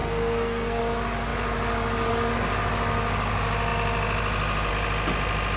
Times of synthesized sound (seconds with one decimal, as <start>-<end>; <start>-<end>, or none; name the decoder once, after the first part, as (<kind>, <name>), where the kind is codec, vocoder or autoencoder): 0.0-0.8 (codec, SNAC)